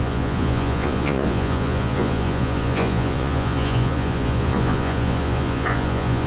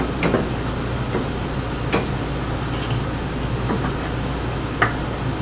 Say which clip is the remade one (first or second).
first